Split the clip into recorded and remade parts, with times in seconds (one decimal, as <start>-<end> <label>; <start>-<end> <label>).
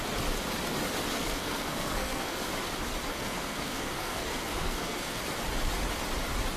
0.0-1.1 recorded; 1.1-2.5 remade; 2.5-3.1 recorded; 3.1-5.2 remade; 5.2-6.6 recorded